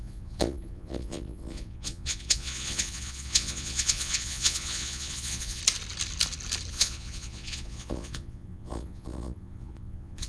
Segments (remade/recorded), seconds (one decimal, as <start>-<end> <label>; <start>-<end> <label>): 0.0-5.6 remade; 5.6-6.7 recorded; 6.7-10.3 remade